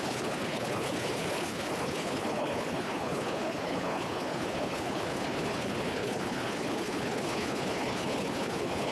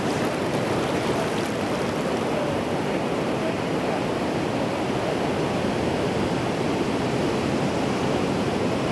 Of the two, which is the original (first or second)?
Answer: second